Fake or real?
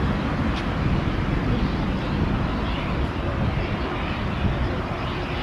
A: real